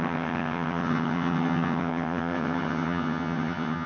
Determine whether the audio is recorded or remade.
remade